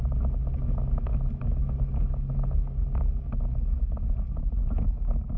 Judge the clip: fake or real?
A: real